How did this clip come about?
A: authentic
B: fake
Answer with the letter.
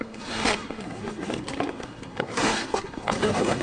B